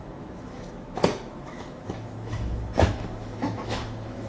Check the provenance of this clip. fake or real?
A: fake